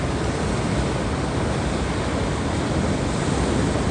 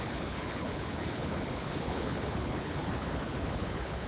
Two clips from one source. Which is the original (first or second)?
first